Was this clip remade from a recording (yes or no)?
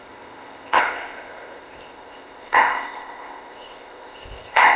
yes